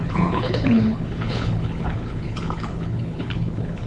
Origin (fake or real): fake